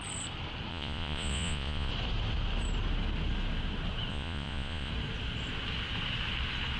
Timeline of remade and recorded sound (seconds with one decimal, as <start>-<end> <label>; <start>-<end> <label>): 0.0-0.7 recorded; 0.7-1.9 remade; 1.9-4.1 recorded; 4.1-4.9 remade; 4.9-6.8 recorded